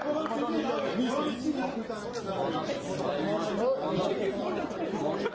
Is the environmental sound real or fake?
real